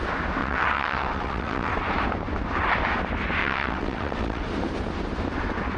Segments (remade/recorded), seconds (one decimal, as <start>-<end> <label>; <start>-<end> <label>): 0.0-0.4 recorded; 0.4-1.7 remade; 1.7-3.4 recorded; 3.4-4.4 remade; 4.4-5.8 recorded